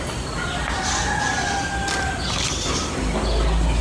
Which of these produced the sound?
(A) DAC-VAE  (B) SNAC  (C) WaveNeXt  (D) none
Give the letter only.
D